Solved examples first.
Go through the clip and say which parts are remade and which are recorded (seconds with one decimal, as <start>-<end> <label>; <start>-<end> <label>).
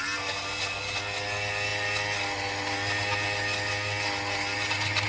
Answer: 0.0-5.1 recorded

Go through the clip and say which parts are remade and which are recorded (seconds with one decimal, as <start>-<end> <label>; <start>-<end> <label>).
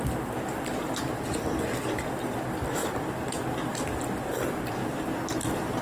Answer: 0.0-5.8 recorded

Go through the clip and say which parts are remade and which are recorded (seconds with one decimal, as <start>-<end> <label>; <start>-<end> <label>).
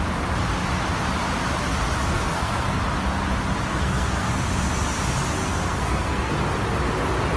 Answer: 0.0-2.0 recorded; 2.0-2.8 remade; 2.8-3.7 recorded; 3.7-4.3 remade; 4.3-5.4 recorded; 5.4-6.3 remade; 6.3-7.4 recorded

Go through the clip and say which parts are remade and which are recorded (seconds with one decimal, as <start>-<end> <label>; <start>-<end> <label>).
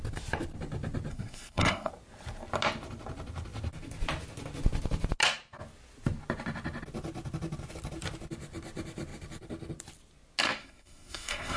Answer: 0.0-1.1 recorded; 1.1-1.9 remade; 1.9-10.6 recorded; 10.6-11.6 remade